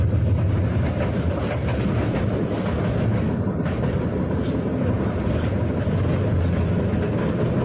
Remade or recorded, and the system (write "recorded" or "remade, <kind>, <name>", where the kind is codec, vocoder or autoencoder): recorded